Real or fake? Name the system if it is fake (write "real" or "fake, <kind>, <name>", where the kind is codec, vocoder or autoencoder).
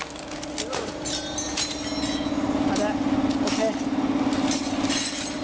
real